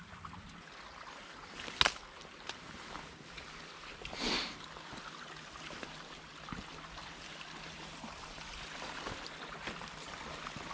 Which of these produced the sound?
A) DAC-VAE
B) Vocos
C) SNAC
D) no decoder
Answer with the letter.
D